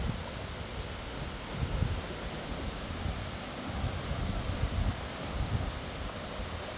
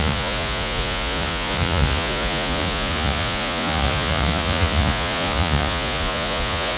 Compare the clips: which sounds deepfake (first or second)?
second